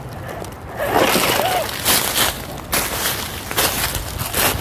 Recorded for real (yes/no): yes